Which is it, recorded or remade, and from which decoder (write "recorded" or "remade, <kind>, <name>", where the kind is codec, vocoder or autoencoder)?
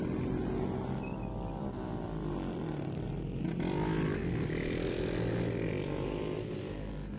recorded